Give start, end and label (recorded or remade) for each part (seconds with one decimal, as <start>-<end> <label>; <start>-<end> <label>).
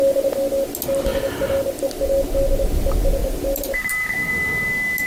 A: 0.0-3.2 recorded; 3.2-4.3 remade; 4.3-5.1 recorded